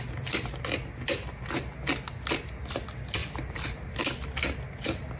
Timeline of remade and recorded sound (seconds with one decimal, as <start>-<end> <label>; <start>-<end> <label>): 0.0-3.2 recorded; 3.2-4.1 remade; 4.1-5.2 recorded